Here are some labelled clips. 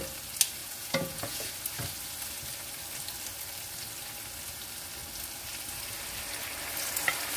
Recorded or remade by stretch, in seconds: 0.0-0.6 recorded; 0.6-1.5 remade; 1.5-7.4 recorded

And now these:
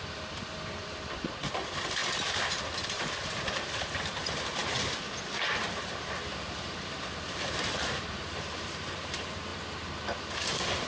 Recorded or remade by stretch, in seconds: 0.0-10.9 remade

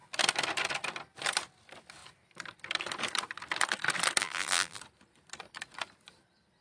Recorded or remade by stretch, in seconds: 0.0-4.2 recorded; 4.2-4.8 remade; 4.8-6.6 recorded

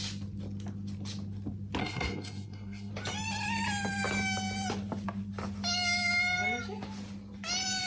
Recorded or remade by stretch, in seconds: 0.0-1.8 recorded; 1.8-2.9 remade; 2.9-7.9 recorded

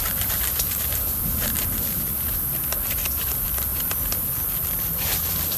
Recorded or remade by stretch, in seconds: 0.0-2.1 remade; 2.1-3.3 recorded; 3.3-3.7 remade; 3.7-4.4 recorded; 4.4-5.6 remade

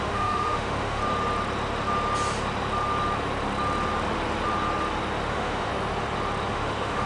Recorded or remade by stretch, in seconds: 0.0-1.0 remade; 1.0-5.3 recorded; 5.3-5.7 remade; 5.7-6.5 recorded; 6.5-7.1 remade

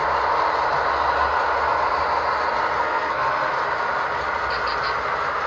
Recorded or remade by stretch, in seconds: 0.0-2.8 recorded; 2.8-3.5 remade; 3.5-5.5 recorded